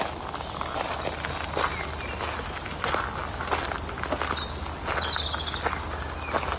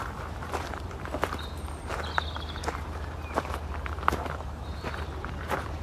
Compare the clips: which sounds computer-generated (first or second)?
second